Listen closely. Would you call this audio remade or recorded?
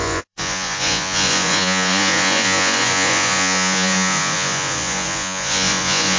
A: remade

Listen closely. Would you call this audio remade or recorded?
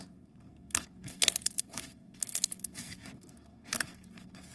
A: remade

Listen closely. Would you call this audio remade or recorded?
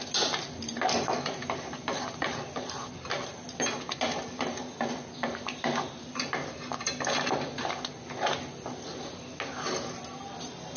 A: recorded